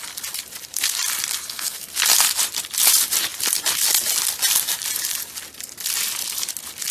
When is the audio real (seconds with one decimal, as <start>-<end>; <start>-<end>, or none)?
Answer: 0.0-1.4; 2.0-6.9